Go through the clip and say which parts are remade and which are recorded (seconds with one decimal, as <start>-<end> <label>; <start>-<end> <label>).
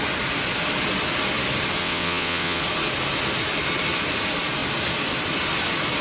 0.0-1.8 recorded; 1.8-2.6 remade; 2.6-6.0 recorded